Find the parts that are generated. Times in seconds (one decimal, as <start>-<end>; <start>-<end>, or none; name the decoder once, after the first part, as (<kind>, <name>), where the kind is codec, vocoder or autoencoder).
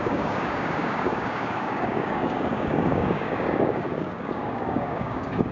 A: 0.0-5.5 (codec, DAC)